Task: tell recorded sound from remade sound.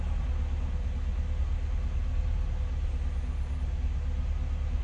recorded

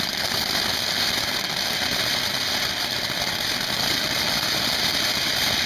recorded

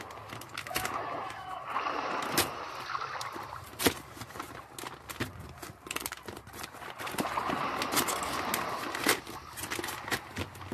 recorded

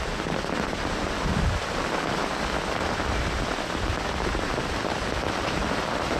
remade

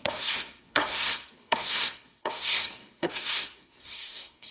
remade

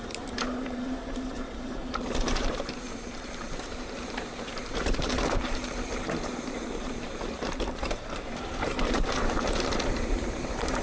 remade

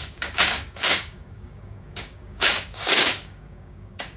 remade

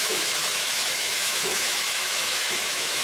remade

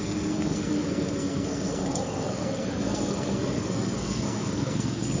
remade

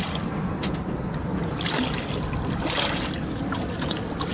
recorded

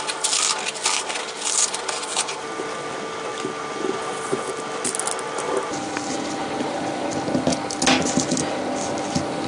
recorded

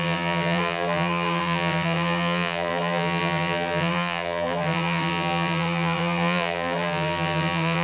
remade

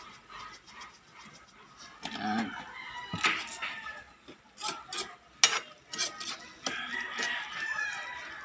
recorded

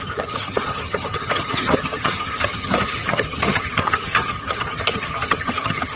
remade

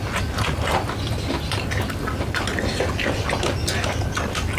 recorded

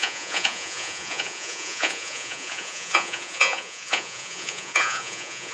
remade